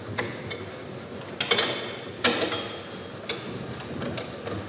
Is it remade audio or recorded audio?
recorded